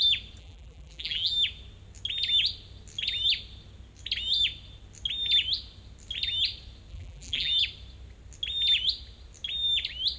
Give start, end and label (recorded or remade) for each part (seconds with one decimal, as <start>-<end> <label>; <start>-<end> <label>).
0.0-0.4 recorded; 0.4-1.3 remade; 1.3-6.9 recorded; 6.9-7.6 remade; 7.6-10.2 recorded